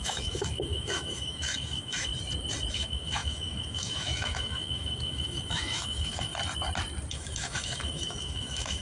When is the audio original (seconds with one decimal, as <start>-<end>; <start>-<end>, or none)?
2.1-2.7; 6.3-7.1